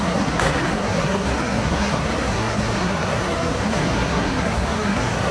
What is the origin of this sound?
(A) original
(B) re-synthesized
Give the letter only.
B